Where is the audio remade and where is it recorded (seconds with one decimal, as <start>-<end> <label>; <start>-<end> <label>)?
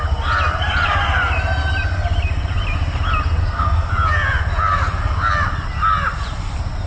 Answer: 0.0-3.4 recorded; 3.4-3.9 remade; 3.9-6.9 recorded